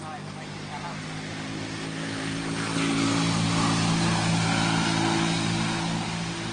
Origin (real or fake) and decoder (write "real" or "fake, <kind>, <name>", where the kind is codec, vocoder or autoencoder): real